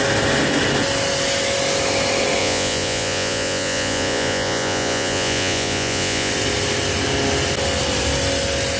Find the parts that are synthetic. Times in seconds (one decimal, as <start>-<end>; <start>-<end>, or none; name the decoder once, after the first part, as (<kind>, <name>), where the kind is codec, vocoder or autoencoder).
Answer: 2.4-6.3 (vocoder, Vocos)